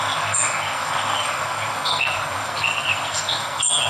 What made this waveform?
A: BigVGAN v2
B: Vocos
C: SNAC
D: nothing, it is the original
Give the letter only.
C